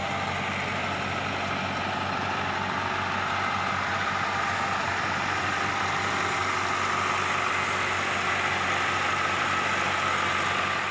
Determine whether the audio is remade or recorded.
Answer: recorded